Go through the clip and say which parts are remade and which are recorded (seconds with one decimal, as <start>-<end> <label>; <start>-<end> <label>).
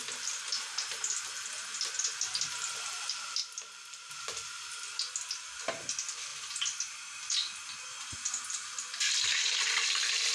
0.0-10.3 recorded